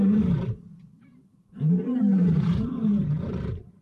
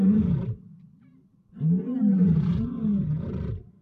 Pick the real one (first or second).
second